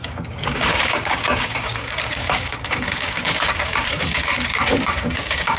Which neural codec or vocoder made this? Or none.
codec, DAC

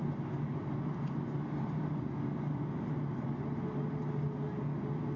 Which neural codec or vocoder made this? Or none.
none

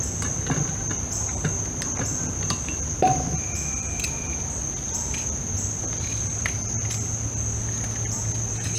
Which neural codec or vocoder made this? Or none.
none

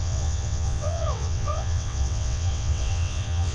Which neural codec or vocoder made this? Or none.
vocoder, WaveNeXt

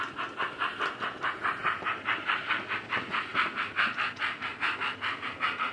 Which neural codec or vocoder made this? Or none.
none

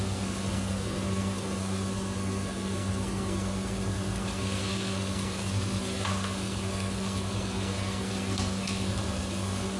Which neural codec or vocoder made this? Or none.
codec, SNAC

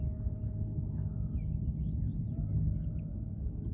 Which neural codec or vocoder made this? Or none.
none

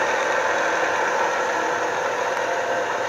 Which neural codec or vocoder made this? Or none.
vocoder, BigVGAN v2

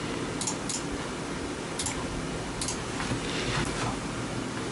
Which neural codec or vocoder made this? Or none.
none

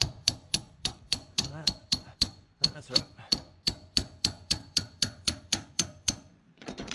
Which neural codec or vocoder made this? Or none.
vocoder, Vocos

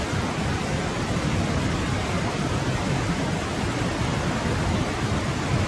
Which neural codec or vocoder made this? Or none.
none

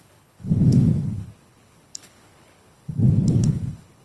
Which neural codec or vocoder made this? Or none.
codec, HILCodec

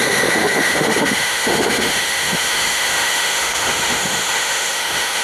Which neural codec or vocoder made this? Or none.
autoencoder, DAC-VAE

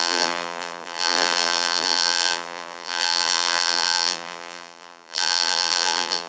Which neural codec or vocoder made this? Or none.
vocoder, BigVGAN v2